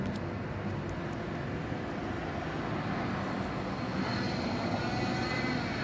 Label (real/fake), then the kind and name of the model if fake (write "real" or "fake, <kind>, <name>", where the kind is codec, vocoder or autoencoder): real